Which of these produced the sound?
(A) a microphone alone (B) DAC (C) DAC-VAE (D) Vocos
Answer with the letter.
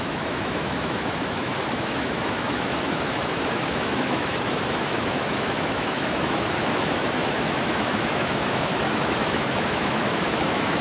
C